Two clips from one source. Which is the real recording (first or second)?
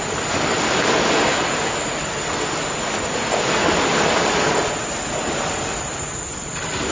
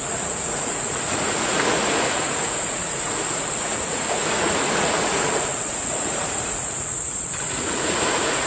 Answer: first